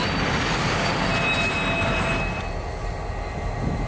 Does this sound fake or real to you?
real